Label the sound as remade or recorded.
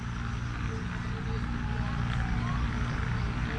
recorded